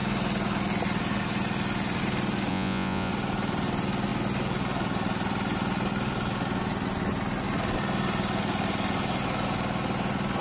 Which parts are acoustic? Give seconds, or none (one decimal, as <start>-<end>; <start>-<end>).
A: 0.0-2.5; 3.1-10.4